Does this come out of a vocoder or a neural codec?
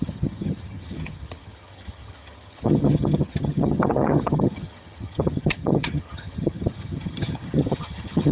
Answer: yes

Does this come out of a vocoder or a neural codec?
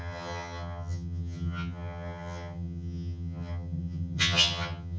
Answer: yes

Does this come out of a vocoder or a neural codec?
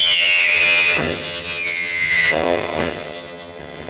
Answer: yes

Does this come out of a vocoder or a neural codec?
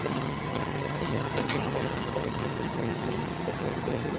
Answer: yes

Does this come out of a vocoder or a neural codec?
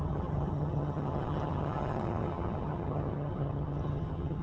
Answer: yes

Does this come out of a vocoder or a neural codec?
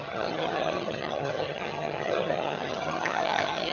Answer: yes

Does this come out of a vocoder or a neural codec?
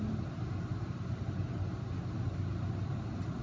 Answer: no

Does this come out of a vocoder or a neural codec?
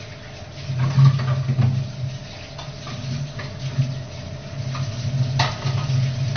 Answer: no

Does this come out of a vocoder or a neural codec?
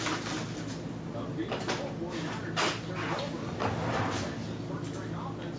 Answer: no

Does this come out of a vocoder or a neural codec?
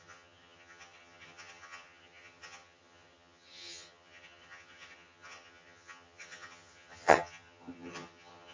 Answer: yes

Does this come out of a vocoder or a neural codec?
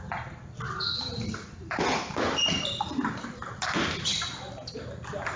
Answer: no